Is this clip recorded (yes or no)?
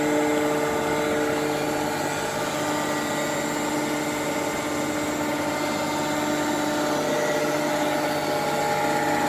yes